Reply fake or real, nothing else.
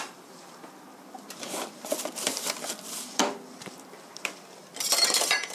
fake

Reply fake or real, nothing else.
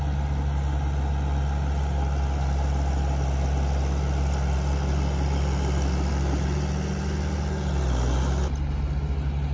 real